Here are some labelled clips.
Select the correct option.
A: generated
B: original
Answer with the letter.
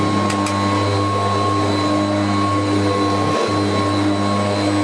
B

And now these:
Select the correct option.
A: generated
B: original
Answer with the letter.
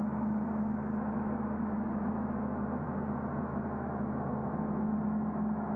A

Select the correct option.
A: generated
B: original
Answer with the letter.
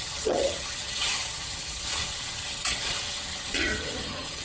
A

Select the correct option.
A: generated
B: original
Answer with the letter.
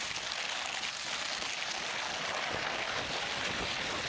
B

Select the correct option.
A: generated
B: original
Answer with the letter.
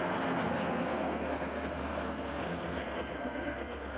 A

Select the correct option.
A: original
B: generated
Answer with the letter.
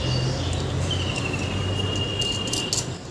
A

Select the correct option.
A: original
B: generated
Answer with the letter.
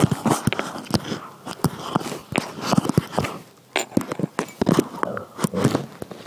A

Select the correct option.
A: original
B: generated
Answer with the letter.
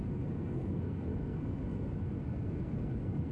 B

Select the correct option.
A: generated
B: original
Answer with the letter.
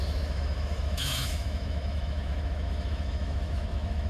A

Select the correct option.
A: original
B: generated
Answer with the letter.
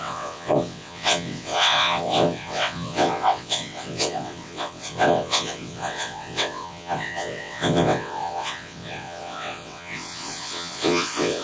B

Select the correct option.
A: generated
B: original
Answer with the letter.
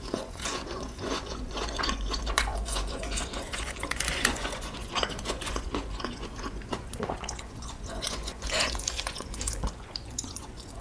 A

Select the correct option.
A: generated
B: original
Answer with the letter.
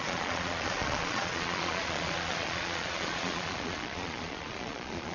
A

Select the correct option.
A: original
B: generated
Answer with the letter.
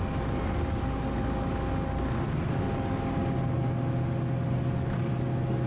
A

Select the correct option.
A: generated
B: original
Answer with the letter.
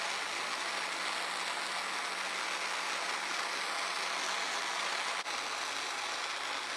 B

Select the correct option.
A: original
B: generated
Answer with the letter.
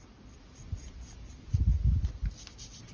A